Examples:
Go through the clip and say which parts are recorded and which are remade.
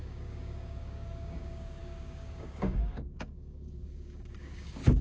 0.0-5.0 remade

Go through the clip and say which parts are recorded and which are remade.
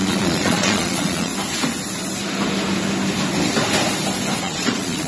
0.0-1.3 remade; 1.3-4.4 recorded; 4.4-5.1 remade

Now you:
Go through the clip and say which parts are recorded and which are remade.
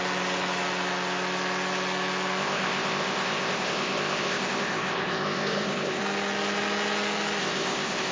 0.0-2.4 recorded; 2.4-6.0 remade; 6.0-7.4 recorded; 7.4-8.1 remade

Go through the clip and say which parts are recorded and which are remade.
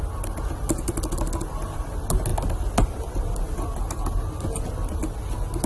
0.0-5.7 recorded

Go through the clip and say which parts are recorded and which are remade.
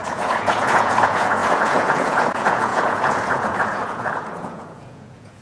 0.0-5.4 remade